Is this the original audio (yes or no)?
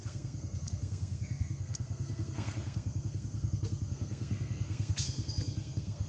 no